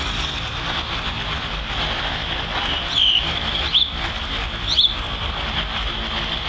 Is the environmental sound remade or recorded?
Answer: recorded